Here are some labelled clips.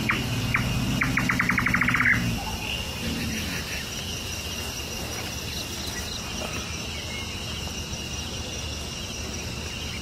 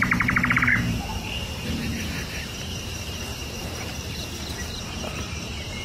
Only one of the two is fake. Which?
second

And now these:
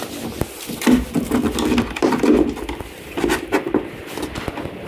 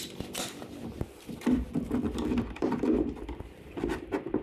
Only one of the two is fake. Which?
second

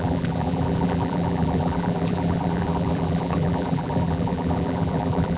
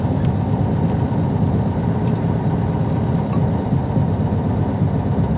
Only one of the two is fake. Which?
first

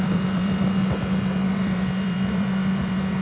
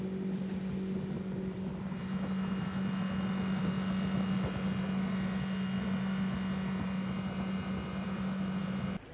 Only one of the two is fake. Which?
first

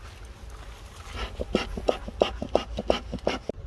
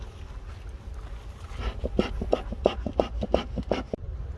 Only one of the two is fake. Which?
second